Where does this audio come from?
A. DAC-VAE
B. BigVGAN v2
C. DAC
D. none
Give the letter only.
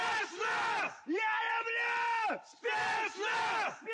D